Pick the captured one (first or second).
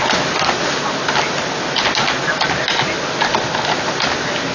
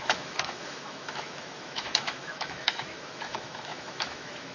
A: first